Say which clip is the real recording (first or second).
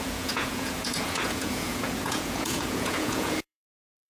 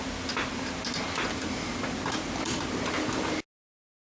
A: second